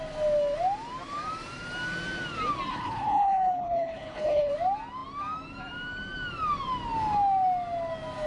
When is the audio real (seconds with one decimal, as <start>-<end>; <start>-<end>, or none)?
0.0-2.7; 4.5-8.3